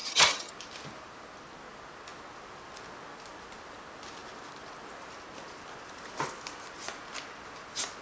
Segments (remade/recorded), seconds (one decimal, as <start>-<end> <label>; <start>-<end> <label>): 0.0-0.5 remade; 0.5-8.0 recorded